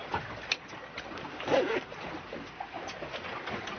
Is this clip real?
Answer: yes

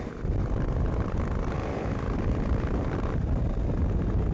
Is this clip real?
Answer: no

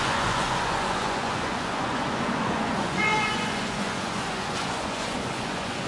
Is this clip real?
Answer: no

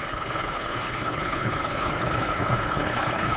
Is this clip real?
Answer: no